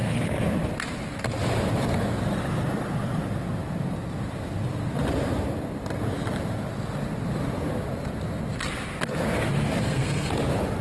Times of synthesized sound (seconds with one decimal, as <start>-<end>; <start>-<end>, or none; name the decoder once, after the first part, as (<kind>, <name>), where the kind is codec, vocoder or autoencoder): 9.8-10.3 (codec, SNAC)